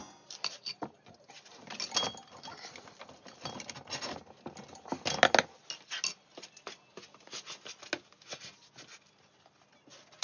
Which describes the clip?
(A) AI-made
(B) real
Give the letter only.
B